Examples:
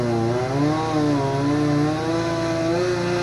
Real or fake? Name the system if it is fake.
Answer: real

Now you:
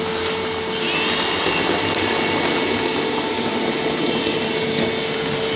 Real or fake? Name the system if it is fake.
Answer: real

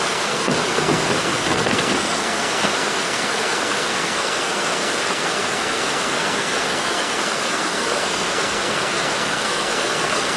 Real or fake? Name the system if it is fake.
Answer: fake, codec, SNAC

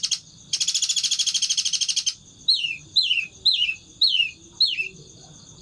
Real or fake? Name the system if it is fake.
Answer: real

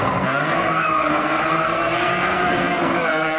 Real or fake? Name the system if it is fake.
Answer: fake, codec, SNAC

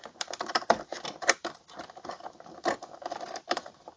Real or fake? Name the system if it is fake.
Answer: fake, vocoder, BigVGAN v2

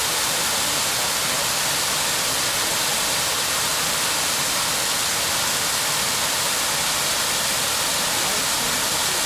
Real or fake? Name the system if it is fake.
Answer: real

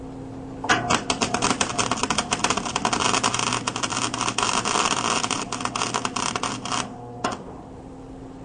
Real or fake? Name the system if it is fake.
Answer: real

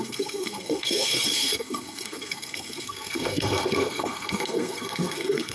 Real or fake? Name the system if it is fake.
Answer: fake, codec, SNAC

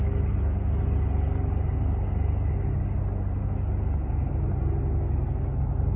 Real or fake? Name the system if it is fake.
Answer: real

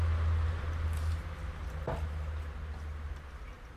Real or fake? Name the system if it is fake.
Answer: real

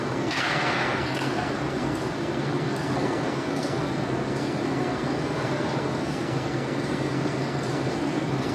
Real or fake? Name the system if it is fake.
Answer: fake, codec, SNAC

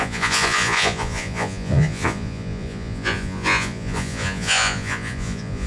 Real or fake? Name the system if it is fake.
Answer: fake, vocoder, Vocos